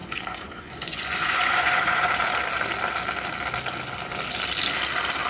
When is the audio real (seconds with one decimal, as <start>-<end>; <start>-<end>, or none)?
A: 2.1-5.3